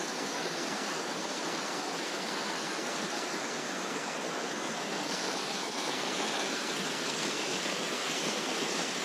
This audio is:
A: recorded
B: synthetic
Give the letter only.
B